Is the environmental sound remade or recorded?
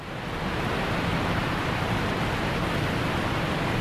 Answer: recorded